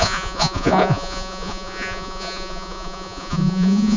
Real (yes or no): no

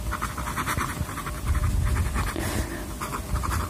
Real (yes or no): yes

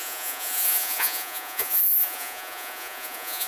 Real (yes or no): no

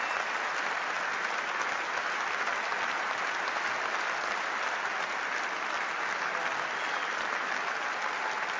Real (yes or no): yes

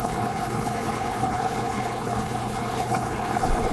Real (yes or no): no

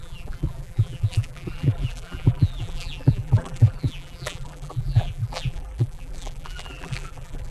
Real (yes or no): no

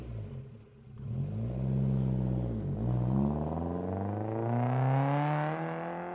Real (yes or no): yes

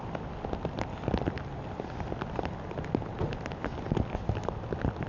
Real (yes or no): yes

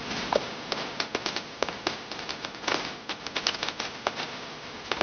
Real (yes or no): yes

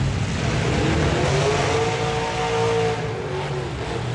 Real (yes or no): yes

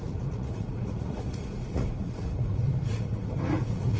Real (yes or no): no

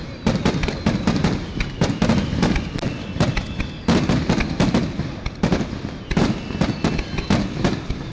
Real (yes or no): yes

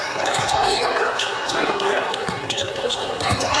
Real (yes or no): no